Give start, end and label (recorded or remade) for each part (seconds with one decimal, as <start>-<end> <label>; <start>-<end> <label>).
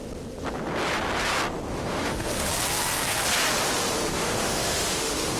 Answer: 0.0-1.7 recorded; 1.7-2.5 remade; 2.5-3.9 recorded; 3.9-5.4 remade